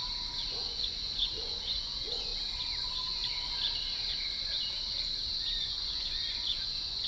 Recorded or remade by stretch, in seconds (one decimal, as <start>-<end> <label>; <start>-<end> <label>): 0.0-0.5 recorded; 0.5-2.3 remade; 2.3-2.8 recorded; 2.8-3.2 remade; 3.2-5.4 recorded; 5.4-7.1 remade